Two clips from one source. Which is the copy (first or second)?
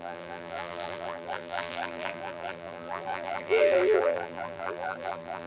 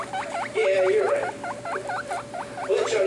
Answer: first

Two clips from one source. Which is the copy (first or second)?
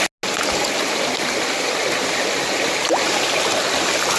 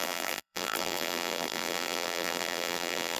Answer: second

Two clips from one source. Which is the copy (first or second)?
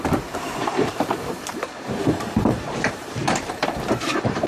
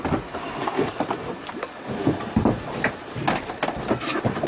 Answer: first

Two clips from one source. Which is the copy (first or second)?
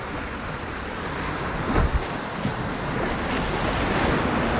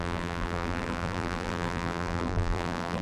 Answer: second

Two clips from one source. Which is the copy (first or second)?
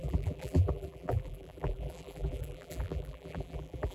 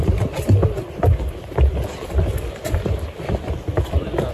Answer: first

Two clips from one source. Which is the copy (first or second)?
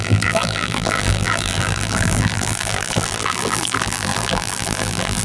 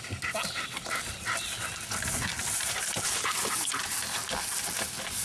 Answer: first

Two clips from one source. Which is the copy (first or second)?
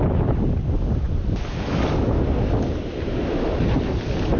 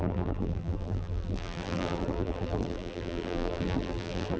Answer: second